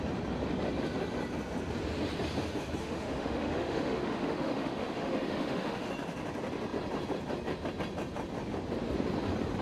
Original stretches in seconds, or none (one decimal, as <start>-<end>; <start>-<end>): 0.0-2.8; 5.9-9.6

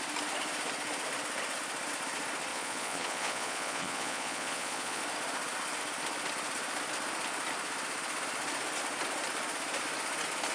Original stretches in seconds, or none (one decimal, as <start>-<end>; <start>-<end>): 0.0-2.5; 5.0-10.5

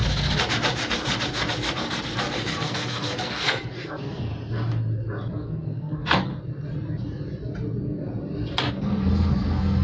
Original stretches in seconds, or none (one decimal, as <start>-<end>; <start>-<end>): 0.0-2.2; 4.3-5.3; 6.3-8.7

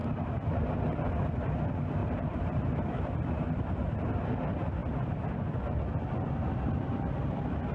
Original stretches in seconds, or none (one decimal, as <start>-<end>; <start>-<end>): 0.0-2.0; 3.6-7.7

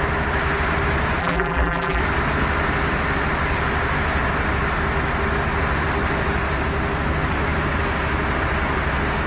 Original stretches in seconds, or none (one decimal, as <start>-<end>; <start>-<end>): 0.0-1.2; 2.0-9.3

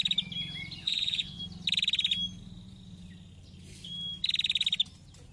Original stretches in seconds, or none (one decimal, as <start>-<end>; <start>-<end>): 0.0-0.8; 1.4-5.3

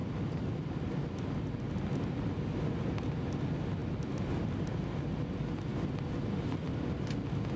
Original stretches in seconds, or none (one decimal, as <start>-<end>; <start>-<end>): 0.7-7.6

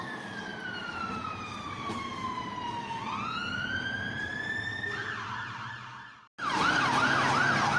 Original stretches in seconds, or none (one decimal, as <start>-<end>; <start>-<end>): 0.0-0.5; 2.7-3.6; 4.4-5.0; 5.7-7.8